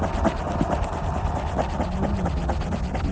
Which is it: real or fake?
real